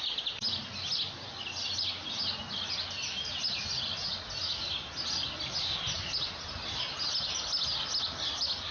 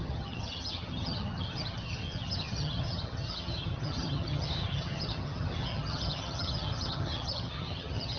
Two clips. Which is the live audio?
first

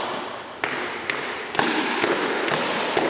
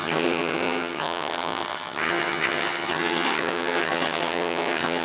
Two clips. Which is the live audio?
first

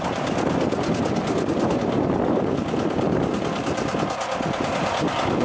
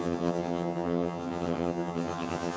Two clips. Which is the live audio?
first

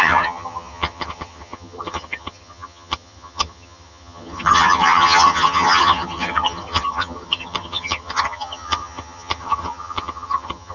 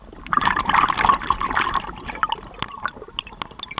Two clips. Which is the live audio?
second